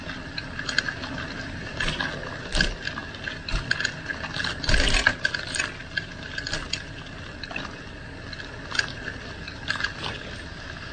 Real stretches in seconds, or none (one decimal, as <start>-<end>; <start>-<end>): 0.0-10.9